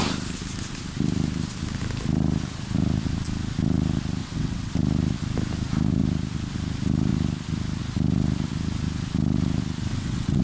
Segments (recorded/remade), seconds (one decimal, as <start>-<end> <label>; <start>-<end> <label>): 0.0-4.2 recorded; 4.2-4.7 remade; 4.7-9.9 recorded; 9.9-10.4 remade